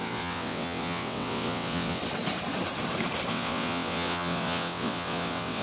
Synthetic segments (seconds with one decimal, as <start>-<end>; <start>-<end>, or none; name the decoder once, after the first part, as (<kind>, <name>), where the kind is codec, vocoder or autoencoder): 0.0-2.0 (vocoder, WaveNeXt); 3.3-5.6